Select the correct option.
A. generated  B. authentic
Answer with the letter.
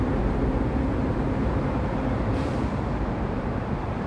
A